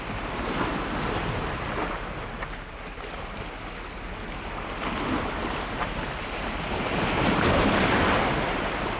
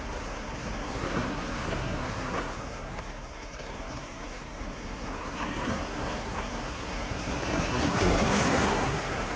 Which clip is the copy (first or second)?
second